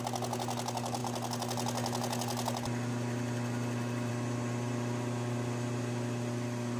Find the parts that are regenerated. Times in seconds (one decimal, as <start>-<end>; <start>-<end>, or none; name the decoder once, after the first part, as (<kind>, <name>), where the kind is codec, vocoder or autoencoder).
none